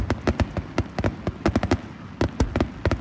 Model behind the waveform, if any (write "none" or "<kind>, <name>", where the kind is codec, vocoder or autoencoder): none